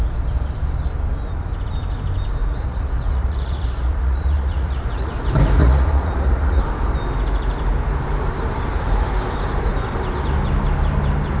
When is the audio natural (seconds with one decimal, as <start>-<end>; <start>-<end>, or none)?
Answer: 0.0-2.4; 5.1-5.6; 6.6-11.4